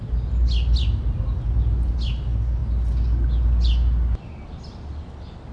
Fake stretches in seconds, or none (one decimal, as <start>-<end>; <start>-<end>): none